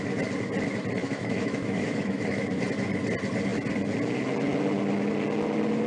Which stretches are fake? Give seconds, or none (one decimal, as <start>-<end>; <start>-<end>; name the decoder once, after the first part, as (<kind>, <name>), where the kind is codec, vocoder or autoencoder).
1.0-2.6 (autoencoder, DAC-VAE)